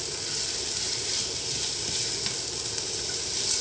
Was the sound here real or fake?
real